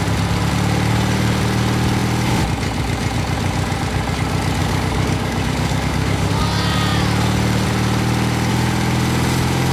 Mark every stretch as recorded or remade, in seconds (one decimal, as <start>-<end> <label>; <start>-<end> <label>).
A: 0.0-4.6 recorded; 4.6-6.4 remade; 6.4-9.7 recorded